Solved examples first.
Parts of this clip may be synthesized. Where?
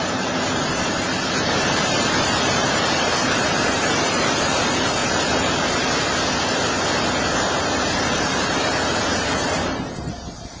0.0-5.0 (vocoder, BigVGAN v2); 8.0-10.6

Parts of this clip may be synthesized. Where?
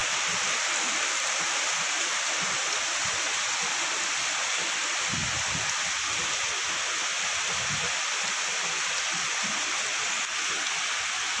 0.0-2.4 (vocoder, BigVGAN v2)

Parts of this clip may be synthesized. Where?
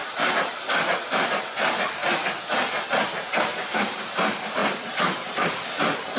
0.0-2.0 (vocoder, BigVGAN v2); 3.4-6.2